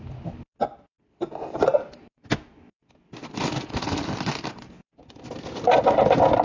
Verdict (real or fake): real